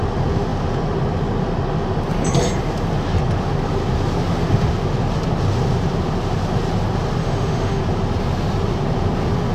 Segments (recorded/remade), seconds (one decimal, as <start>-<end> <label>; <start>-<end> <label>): 0.0-7.2 recorded; 7.2-7.8 remade; 7.8-9.5 recorded